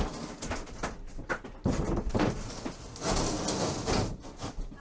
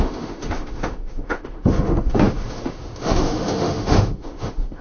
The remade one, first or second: second